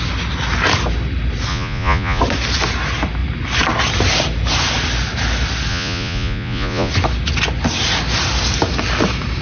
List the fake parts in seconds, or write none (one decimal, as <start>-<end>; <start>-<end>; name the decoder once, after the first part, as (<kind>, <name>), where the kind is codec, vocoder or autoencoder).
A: 1.5-2.2 (vocoder, Vocos); 5.7-6.9